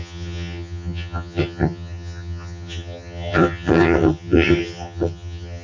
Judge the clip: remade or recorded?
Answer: remade